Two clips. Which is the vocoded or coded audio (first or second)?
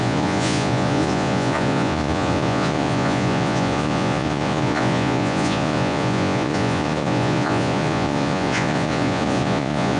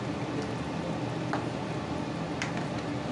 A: first